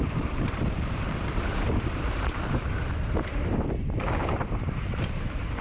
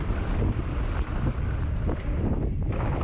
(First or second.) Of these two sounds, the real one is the second